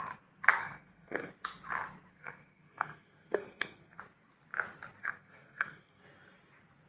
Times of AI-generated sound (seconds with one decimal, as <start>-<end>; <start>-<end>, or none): 0.6-1.3; 2.1-4.0; 5.0-6.0